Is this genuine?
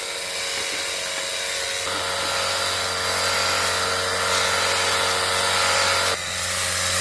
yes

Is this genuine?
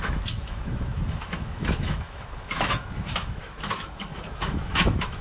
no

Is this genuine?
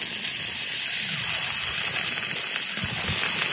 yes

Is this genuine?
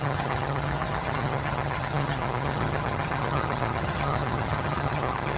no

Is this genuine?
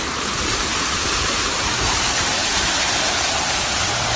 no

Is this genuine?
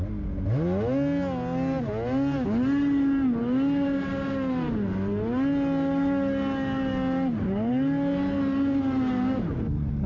yes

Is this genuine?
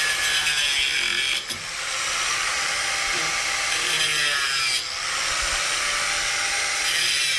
yes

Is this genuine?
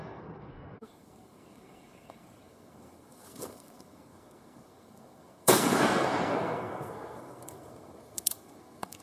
no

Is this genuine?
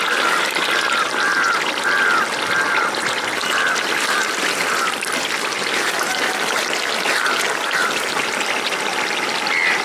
yes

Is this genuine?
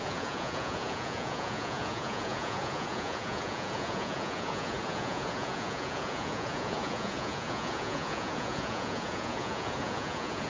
no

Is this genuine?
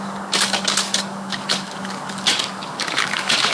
no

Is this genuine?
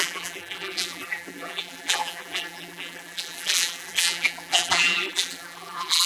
no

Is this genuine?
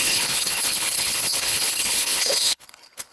no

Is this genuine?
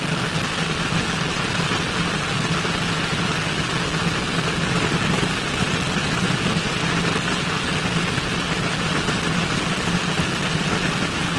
yes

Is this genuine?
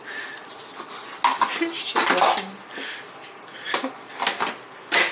yes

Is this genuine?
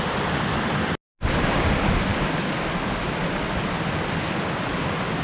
yes